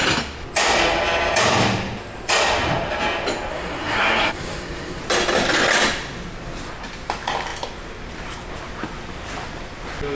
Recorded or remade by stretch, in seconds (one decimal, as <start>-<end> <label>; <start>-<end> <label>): 0.0-3.5 recorded; 3.5-5.0 remade; 5.0-10.1 recorded